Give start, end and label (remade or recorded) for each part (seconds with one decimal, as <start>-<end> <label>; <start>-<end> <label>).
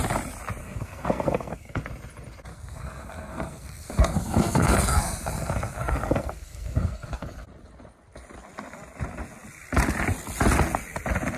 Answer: 0.0-0.6 recorded; 0.6-1.8 remade; 1.8-2.5 recorded; 2.5-7.3 remade; 7.3-11.4 recorded